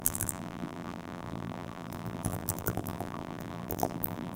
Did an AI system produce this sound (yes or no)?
yes